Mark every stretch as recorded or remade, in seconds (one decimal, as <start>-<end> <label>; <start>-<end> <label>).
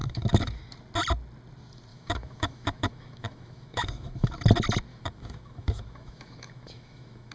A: 0.0-0.6 remade; 0.6-1.9 recorded; 1.9-4.3 remade; 4.3-4.9 recorded; 4.9-7.3 remade